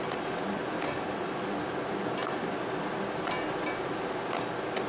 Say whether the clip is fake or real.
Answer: real